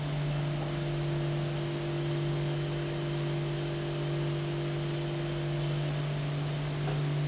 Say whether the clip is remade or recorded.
recorded